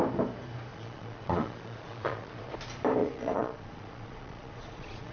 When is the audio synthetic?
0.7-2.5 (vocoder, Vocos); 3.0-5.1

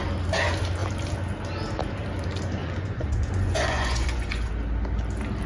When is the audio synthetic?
2.6-4.5 (vocoder, Vocos)

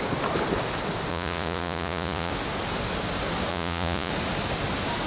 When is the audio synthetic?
1.1-2.3 (vocoder, Vocos); 3.5-4.1

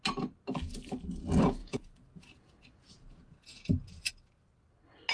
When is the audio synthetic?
1.6-4.1 (vocoder, Vocos)

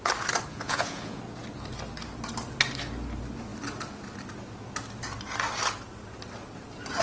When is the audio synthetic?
0.5-1.2 (vocoder, Vocos)

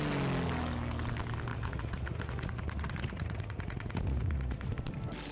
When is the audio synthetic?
1.5-4.7 (vocoder, Vocos)